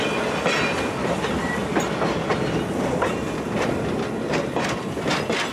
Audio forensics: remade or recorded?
recorded